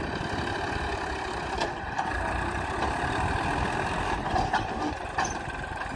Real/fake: real